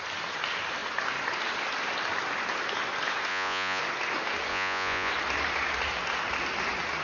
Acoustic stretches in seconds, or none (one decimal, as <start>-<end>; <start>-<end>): 0.0-3.3; 3.8-4.5; 5.1-7.0